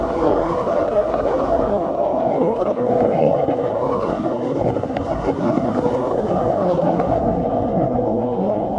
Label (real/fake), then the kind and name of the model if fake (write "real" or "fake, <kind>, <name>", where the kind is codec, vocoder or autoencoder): fake, codec, SNAC